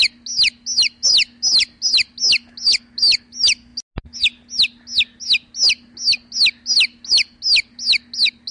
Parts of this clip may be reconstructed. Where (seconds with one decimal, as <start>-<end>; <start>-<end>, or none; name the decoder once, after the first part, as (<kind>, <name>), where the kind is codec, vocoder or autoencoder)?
none